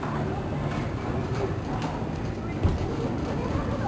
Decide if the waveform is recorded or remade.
recorded